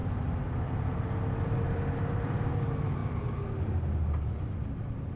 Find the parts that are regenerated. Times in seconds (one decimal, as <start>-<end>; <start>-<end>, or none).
none